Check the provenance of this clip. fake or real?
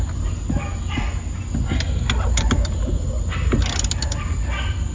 real